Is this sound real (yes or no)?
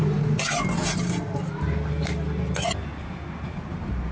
yes